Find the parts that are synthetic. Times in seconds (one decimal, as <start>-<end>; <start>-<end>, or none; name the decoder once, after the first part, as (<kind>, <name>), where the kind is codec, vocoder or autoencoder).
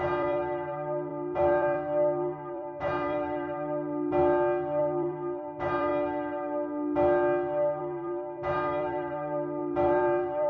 0.0-4.2 (vocoder, BigVGAN v2); 4.8-5.9; 7.8-10.5